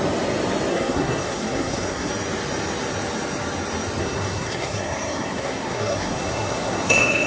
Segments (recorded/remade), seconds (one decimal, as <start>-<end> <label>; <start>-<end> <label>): 0.0-0.7 recorded; 0.7-2.1 remade; 2.1-4.0 recorded; 4.0-7.3 remade